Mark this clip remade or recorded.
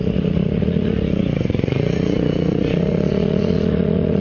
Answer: remade